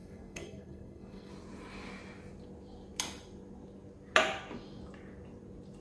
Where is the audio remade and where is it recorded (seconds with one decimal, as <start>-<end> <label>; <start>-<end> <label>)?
0.0-1.3 remade; 1.3-5.8 recorded